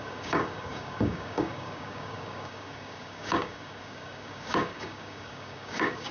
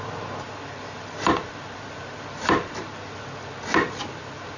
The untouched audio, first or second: second